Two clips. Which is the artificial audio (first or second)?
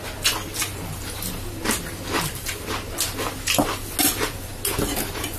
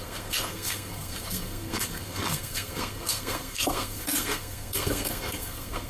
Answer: second